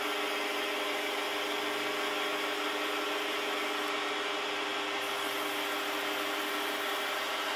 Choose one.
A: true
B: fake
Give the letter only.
A